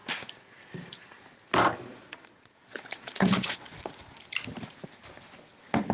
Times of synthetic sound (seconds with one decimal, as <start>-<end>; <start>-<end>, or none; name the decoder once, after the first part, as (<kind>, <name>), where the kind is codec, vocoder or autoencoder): 1.9-3.9 (vocoder, Vocos)